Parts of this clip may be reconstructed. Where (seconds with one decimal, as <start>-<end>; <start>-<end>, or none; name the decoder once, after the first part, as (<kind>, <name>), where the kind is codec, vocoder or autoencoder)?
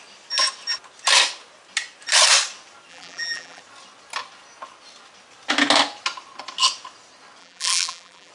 2.9-3.6 (vocoder, BigVGAN v2); 7.4-8.3